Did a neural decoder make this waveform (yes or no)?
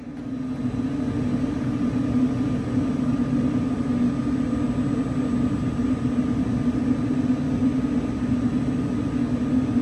no